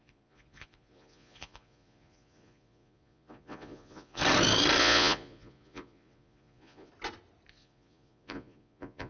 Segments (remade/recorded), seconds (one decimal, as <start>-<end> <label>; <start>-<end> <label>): 0.0-4.2 remade; 4.2-4.8 recorded; 4.8-6.9 remade; 6.9-7.5 recorded; 7.5-9.1 remade